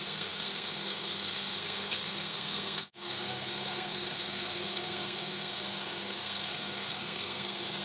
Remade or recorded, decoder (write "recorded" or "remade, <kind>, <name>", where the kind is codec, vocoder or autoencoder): remade, codec, SNAC